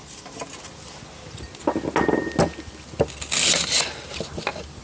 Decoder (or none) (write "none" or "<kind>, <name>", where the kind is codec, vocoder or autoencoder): none